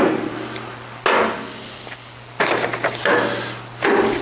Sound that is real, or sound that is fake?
real